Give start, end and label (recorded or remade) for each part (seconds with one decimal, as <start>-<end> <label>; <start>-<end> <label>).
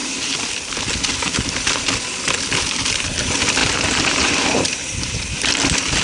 0.0-3.6 recorded; 3.6-5.3 remade; 5.3-6.0 recorded